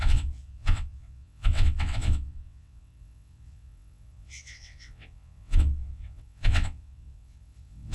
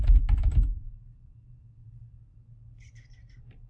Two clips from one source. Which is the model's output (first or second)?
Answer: first